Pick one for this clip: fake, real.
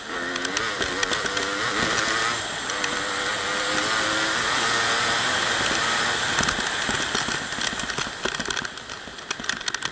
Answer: real